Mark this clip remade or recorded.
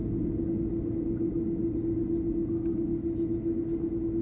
recorded